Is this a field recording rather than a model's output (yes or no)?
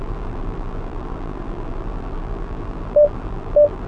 no